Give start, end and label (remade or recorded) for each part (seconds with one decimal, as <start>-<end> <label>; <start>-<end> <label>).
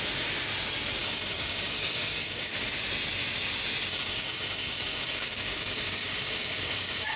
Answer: 0.0-1.0 recorded; 1.0-2.5 remade; 2.5-3.9 recorded; 3.9-7.2 remade